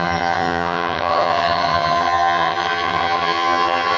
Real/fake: fake